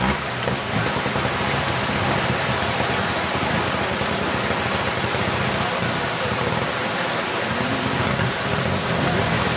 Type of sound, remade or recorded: recorded